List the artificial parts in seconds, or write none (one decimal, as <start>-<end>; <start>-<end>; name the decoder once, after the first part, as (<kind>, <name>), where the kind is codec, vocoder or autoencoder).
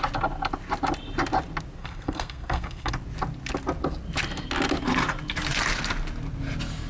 1.8-2.9 (codec, SNAC)